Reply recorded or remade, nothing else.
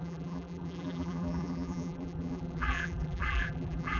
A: remade